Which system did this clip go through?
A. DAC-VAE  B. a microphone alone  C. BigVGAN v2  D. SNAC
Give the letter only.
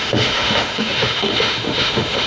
A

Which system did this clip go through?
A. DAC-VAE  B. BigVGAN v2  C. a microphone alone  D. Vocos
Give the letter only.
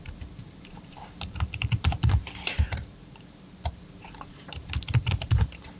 B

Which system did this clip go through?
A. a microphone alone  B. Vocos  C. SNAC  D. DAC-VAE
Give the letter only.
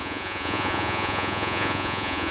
B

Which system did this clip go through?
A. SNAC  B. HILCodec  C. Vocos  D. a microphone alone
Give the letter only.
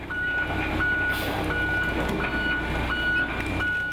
D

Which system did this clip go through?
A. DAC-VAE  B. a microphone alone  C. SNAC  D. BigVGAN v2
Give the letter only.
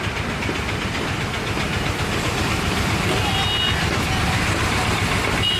B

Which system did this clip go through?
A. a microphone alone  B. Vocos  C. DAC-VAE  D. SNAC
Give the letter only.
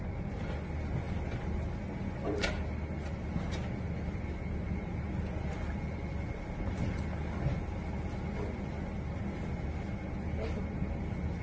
A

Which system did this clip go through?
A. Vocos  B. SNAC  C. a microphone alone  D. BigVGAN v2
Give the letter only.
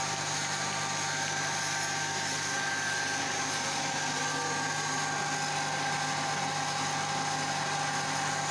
C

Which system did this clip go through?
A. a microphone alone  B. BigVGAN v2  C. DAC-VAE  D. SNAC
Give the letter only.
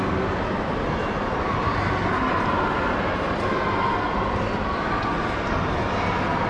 A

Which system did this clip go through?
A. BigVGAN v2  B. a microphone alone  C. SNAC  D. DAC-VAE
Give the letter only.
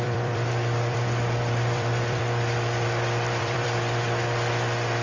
A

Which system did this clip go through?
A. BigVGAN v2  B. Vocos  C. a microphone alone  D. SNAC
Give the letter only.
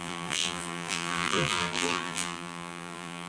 A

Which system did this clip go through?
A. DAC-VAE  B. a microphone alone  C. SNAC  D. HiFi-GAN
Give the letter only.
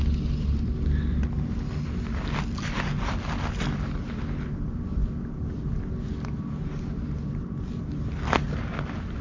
B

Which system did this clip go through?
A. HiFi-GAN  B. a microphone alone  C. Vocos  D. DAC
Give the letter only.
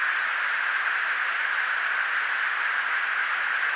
B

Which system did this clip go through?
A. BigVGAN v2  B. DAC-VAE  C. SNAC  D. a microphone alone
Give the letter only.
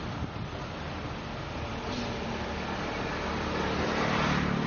D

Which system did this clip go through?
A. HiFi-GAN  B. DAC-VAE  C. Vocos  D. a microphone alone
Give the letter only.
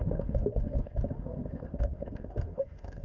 B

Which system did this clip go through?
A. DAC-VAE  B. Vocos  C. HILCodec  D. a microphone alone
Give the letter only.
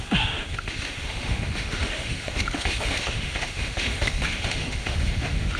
A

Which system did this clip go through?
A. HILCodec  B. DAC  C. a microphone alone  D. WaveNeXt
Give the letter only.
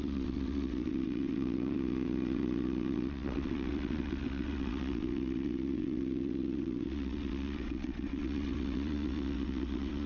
D